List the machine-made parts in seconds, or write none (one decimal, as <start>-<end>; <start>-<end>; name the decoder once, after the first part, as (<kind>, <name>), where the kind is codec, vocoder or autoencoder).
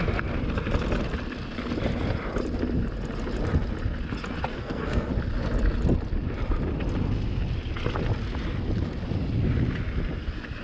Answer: 4.5-5.1 (codec, SNAC)